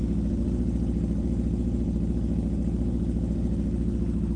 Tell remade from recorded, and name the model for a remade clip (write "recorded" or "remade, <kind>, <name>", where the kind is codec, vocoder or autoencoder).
recorded